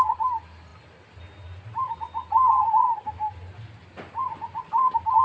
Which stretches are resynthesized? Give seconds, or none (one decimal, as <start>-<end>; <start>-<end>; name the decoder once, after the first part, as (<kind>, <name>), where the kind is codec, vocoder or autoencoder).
none